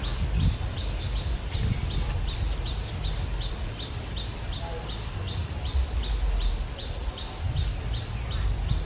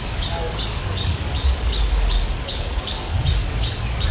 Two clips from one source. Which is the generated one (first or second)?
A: second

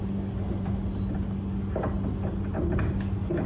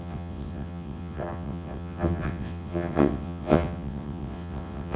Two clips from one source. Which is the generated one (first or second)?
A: second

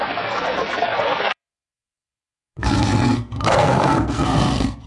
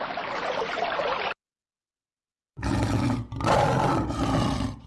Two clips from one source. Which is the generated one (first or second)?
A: first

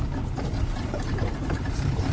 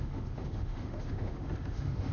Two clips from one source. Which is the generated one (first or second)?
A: second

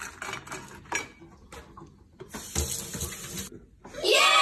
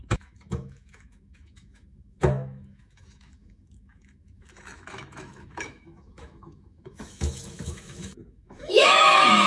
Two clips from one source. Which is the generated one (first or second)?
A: second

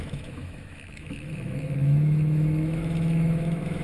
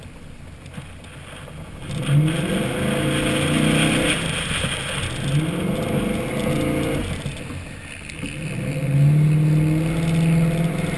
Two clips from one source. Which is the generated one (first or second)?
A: first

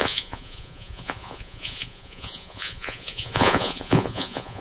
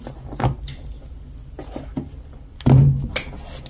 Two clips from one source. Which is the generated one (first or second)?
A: first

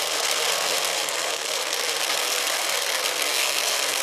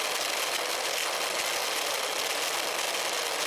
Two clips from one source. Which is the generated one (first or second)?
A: first